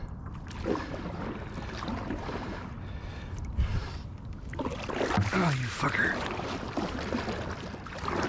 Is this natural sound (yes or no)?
yes